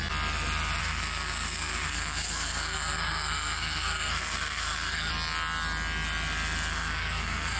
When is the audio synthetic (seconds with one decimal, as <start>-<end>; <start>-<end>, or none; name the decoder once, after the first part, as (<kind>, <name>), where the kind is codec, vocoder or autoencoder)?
0.8-5.1 (codec, SNAC); 6.7-7.6